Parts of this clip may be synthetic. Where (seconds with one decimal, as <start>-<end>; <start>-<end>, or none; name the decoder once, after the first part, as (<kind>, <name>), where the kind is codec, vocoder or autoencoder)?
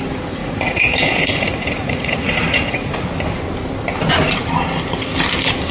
0.4-2.9 (vocoder, Vocos)